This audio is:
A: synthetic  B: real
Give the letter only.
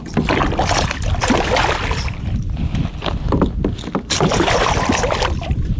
B